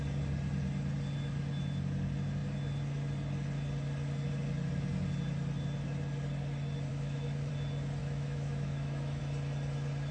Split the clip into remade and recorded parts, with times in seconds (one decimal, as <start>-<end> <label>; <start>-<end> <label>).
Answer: 0.0-6.9 recorded; 6.9-7.5 remade; 7.5-8.0 recorded; 8.0-9.2 remade; 9.2-10.1 recorded